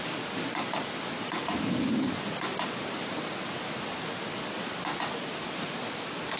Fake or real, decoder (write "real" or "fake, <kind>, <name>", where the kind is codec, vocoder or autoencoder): real